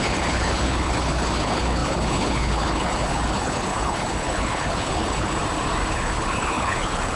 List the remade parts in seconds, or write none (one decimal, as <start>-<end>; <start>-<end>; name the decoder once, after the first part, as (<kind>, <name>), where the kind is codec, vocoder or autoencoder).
0.0-5.4 (codec, HILCodec); 5.9-7.2